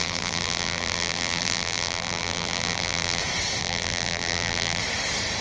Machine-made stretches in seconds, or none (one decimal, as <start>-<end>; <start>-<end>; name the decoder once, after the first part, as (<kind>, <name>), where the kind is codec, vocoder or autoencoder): 0.0-3.2 (vocoder, BigVGAN v2); 3.6-4.8